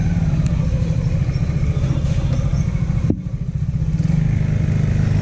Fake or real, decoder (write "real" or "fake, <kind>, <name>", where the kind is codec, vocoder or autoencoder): real